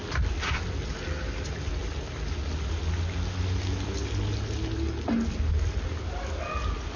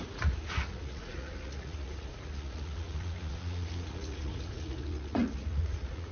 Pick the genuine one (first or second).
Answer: first